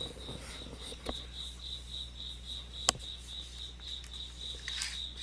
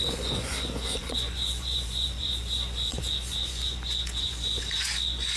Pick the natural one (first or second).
first